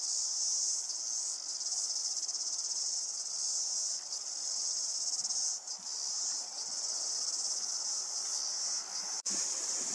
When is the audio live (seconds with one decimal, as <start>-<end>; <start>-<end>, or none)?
0.0-2.0; 3.3-9.9